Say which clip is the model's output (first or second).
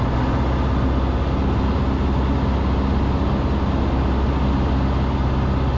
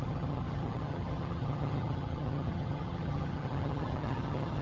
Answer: second